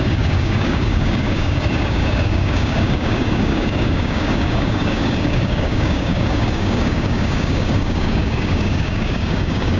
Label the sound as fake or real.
fake